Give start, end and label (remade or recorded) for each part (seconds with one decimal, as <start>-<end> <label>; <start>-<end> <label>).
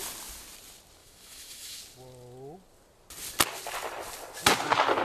0.0-1.0 recorded; 1.0-1.8 remade; 1.8-5.0 recorded